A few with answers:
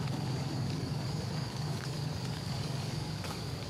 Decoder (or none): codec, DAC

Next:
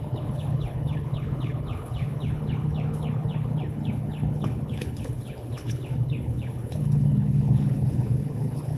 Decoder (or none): codec, HILCodec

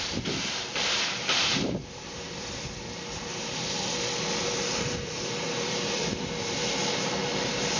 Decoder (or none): vocoder, BigVGAN v2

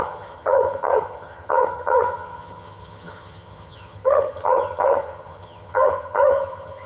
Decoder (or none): vocoder, HiFi-GAN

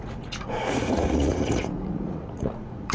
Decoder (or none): vocoder, Vocos